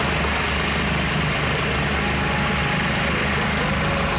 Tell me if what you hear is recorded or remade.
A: recorded